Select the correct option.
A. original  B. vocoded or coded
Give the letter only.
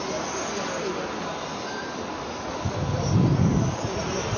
A